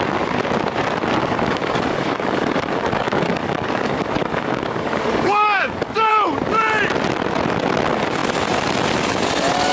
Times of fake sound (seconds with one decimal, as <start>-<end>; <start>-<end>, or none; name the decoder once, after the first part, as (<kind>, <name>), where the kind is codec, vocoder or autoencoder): 1.2-6.1 (codec, DAC)